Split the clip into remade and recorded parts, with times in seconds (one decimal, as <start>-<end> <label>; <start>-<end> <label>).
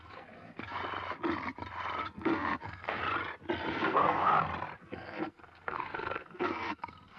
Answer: 0.0-0.8 remade; 0.8-2.0 recorded; 2.0-3.0 remade; 3.0-3.7 recorded; 3.7-4.3 remade; 4.3-4.8 recorded; 4.8-7.2 remade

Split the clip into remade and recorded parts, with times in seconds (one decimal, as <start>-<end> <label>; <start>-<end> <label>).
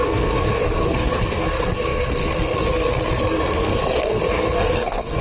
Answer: 0.0-5.2 remade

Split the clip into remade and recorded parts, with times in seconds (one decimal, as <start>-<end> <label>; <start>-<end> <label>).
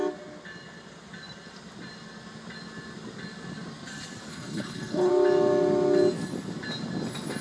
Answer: 0.0-4.3 recorded; 4.3-5.1 remade; 5.1-7.4 recorded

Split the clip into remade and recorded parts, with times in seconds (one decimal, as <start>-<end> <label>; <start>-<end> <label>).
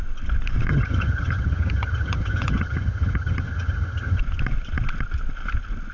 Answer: 0.0-0.7 recorded; 0.7-4.2 remade; 4.2-5.9 recorded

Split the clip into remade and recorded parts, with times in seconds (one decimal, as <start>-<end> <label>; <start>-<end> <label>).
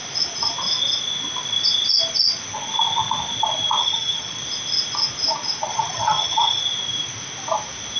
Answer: 0.0-3.8 recorded; 3.8-4.4 remade; 4.4-5.7 recorded; 5.7-6.6 remade; 6.6-8.0 recorded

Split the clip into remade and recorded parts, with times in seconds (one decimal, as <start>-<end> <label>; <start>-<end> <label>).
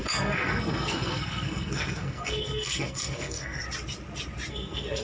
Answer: 0.0-3.6 remade; 3.6-4.5 recorded; 4.5-5.0 remade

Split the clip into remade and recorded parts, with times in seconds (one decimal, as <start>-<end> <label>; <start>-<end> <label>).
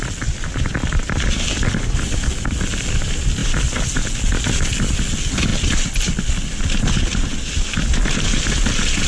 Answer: 0.0-9.1 recorded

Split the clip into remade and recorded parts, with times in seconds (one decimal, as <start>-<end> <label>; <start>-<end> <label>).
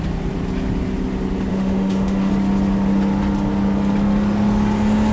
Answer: 0.0-1.5 recorded; 1.5-2.3 remade; 2.3-5.1 recorded